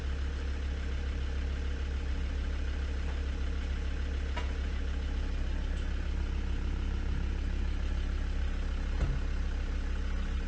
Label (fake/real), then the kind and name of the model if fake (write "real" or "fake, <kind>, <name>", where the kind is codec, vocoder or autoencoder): real